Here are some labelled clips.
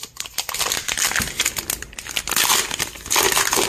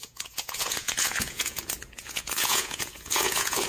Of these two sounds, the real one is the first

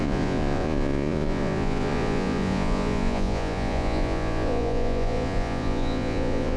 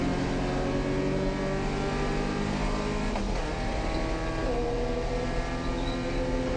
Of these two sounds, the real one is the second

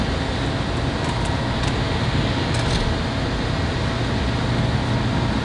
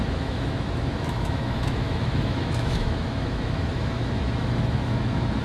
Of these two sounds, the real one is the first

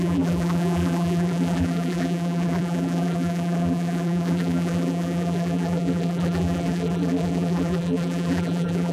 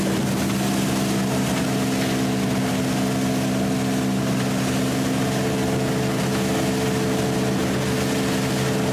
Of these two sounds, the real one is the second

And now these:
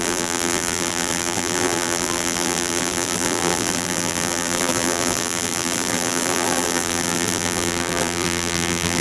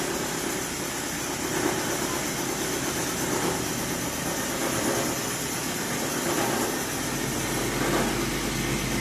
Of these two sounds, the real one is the second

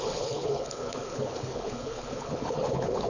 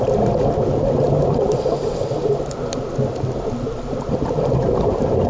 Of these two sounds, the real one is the second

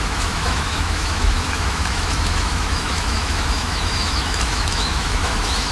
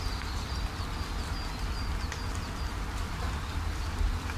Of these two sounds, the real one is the second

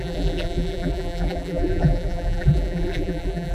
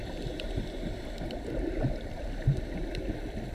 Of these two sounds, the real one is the second